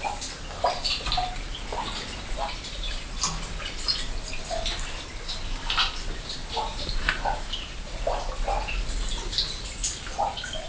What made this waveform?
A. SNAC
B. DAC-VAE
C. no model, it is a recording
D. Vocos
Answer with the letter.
C